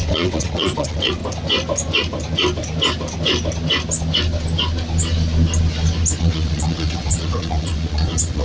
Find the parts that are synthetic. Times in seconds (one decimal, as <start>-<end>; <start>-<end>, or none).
0.0-1.2; 6.2-8.4